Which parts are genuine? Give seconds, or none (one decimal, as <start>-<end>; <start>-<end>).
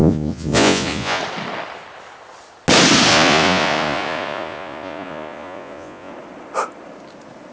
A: 1.2-3.1; 6.1-7.5